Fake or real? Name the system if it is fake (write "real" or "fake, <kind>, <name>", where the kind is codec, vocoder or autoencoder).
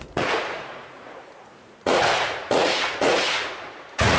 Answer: fake, vocoder, Vocos